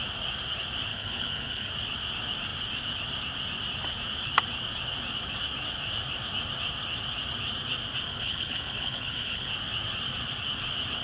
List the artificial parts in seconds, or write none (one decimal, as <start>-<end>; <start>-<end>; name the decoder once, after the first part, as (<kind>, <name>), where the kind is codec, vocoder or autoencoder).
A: 0.9-1.7 (codec, HILCodec); 8.1-9.5